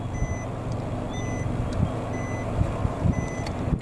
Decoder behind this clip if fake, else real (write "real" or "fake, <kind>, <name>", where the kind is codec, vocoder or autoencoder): real